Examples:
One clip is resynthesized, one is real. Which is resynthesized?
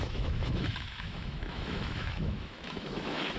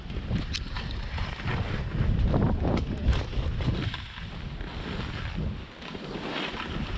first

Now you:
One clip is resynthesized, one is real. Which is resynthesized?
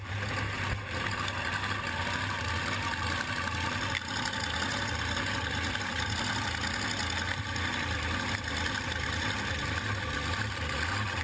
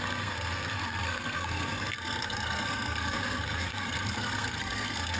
second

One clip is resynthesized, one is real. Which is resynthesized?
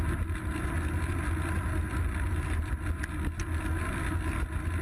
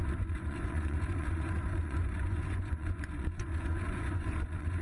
second